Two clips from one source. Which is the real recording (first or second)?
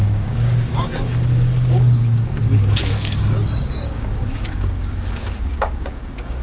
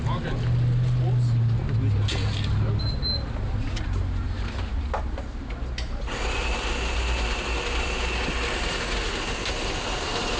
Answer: second